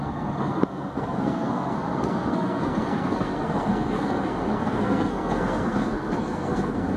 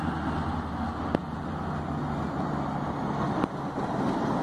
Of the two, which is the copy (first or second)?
first